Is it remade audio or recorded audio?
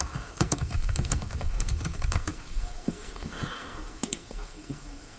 remade